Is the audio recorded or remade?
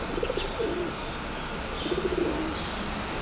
recorded